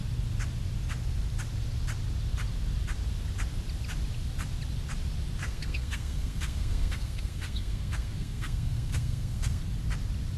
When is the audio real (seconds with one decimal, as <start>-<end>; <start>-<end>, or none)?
0.0-5.4; 9.6-10.4

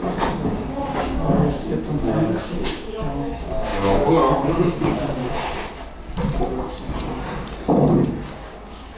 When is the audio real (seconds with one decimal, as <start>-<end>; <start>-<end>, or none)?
5.2-7.9